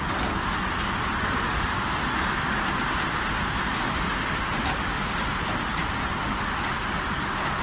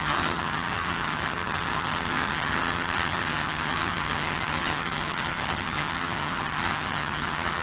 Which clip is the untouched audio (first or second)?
first